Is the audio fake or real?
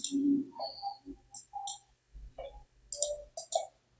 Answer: real